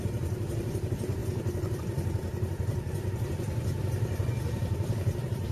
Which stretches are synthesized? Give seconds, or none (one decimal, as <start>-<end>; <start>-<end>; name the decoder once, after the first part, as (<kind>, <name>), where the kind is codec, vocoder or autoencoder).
0.0-1.2 (vocoder, BigVGAN v2); 4.5-5.5